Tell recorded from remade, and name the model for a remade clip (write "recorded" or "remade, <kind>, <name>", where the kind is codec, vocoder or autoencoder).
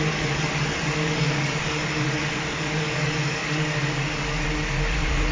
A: remade, codec, DAC